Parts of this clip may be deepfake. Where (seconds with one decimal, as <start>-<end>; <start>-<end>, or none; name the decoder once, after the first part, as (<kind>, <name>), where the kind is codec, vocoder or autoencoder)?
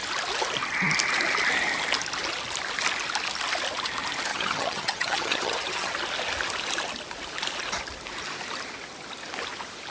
4.3-5.9 (vocoder, HiFi-GAN)